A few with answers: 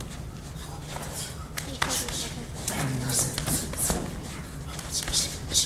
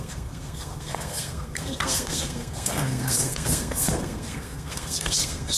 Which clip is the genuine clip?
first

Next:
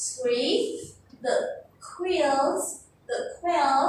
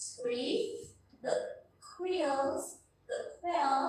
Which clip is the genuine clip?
first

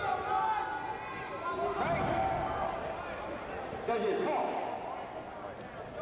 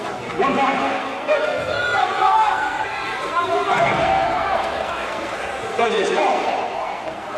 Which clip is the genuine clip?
first